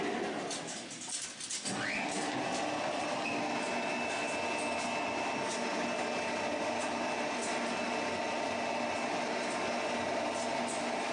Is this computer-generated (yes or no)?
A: no